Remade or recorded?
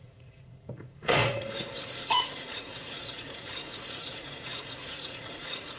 remade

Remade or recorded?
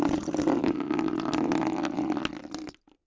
recorded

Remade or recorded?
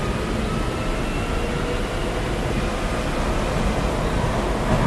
recorded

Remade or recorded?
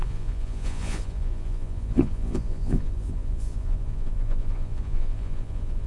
remade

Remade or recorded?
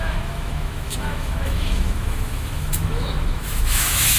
remade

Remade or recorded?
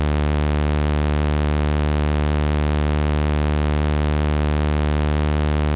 recorded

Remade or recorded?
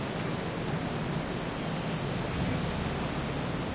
recorded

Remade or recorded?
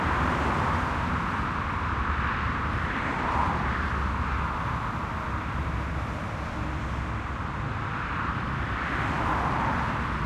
remade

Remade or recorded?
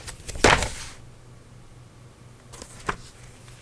recorded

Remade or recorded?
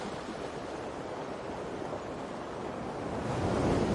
recorded